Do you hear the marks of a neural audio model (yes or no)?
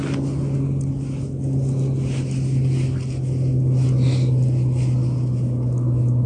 no